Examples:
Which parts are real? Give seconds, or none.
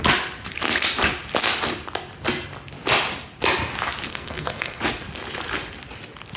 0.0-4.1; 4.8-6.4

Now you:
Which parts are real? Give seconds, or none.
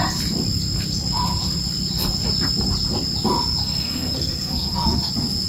0.0-3.6; 5.1-5.5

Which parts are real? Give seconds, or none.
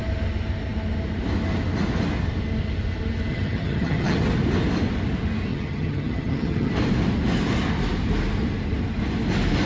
0.0-3.3; 4.2-5.5; 6.7-9.7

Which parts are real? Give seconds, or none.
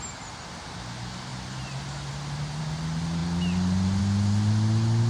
0.0-5.1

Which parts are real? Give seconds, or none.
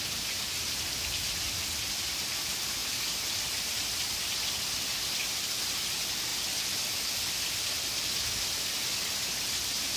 0.0-10.0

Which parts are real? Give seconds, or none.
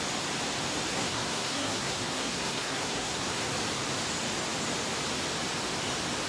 0.0-0.9; 3.5-6.3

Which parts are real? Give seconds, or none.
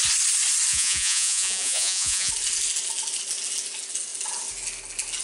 0.0-0.7; 2.3-5.2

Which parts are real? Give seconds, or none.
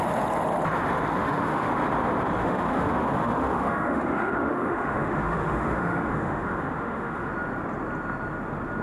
0.0-1.2; 1.7-2.4; 7.3-8.8